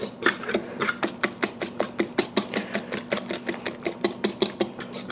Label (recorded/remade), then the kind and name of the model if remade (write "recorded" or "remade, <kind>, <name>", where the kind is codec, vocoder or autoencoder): recorded